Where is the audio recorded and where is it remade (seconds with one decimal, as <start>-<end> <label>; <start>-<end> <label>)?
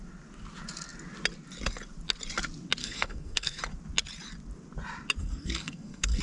0.0-2.8 recorded; 2.8-3.6 remade; 3.6-5.2 recorded; 5.2-6.2 remade